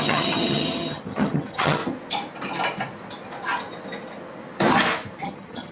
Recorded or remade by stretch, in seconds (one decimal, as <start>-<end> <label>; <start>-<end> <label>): 0.0-1.8 remade; 1.8-5.2 recorded; 5.2-5.7 remade